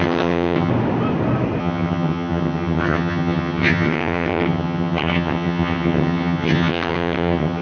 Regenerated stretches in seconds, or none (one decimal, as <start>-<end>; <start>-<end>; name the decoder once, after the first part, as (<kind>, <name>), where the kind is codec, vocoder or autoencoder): 0.0-0.7 (vocoder, HiFi-GAN); 1.6-7.6

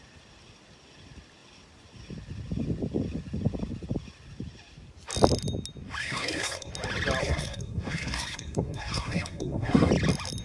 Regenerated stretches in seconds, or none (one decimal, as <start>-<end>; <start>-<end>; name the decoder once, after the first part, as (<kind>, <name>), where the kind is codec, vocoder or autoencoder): 6.0-6.7 (codec, SNAC); 7.2-9.9